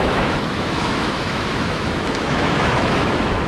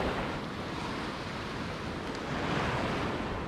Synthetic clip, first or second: first